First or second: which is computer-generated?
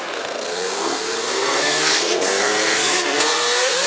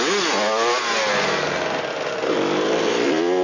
first